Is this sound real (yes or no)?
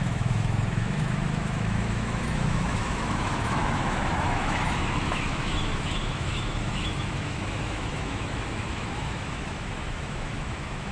no